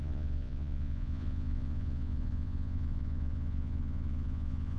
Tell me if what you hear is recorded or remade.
remade